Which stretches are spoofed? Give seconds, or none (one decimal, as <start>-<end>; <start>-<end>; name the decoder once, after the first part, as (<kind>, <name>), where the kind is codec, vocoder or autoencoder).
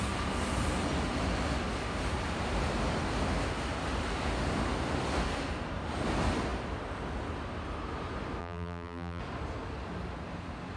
8.4-9.2 (vocoder, BigVGAN v2)